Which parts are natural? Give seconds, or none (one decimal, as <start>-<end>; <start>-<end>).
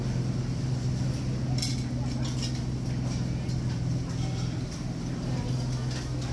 0.0-6.3